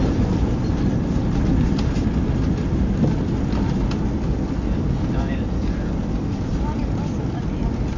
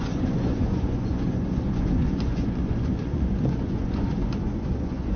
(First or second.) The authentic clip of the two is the first